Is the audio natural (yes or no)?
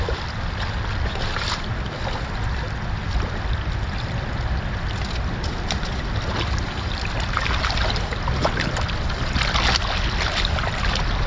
yes